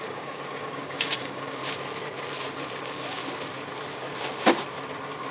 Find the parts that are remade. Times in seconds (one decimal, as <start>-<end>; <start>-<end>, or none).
0.0-1.6; 2.8-3.2

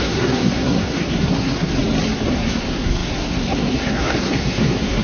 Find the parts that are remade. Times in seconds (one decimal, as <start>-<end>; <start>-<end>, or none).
0.0-1.7; 2.3-5.0